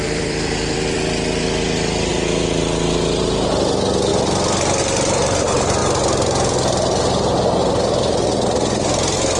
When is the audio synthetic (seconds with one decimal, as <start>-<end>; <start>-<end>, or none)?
0.0-2.1; 3.2-5.8